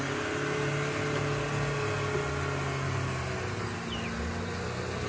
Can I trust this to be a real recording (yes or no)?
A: yes